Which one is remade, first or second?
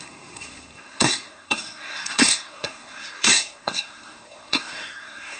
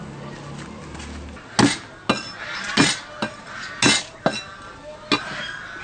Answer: first